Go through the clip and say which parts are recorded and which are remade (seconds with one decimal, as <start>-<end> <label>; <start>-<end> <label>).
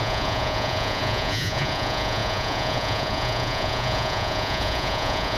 0.0-5.4 remade